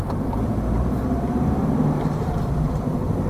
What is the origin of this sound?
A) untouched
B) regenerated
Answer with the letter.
B